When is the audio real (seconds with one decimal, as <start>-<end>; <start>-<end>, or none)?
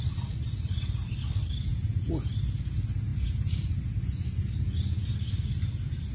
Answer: 0.0-1.7; 2.3-6.1